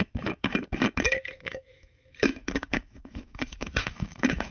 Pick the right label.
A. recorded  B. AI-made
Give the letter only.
B